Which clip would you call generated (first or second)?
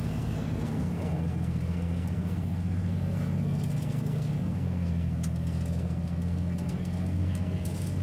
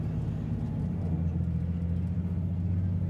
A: first